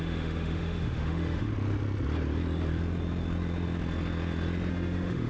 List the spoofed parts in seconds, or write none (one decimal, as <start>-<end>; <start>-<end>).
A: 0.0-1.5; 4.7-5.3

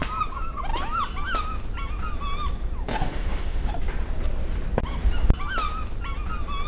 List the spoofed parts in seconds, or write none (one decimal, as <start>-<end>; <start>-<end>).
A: 2.9-3.7

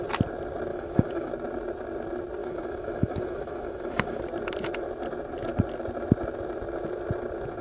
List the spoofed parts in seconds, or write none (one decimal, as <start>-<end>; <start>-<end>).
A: 0.7-1.3; 2.4-4.2